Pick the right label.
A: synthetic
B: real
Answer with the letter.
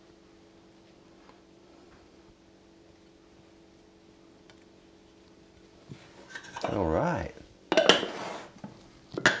B